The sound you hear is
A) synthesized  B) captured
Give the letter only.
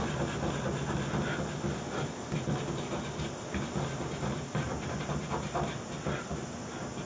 B